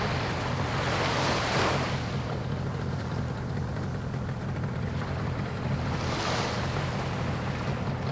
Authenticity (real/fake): real